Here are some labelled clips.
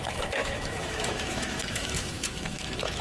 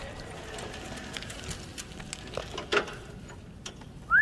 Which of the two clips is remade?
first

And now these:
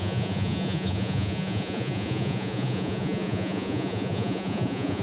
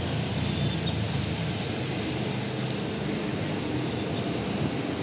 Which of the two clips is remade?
first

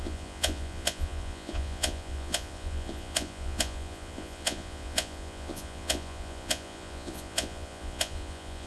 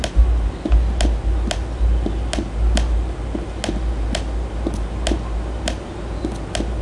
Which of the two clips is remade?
first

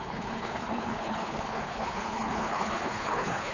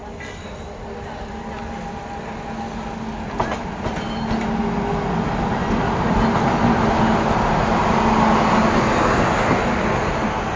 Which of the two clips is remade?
first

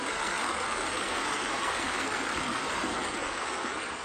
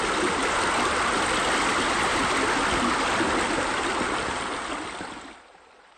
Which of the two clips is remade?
first